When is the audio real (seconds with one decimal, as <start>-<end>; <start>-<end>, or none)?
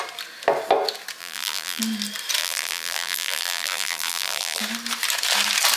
0.0-1.2; 1.8-2.4; 4.6-5.8